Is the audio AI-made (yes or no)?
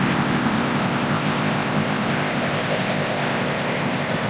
yes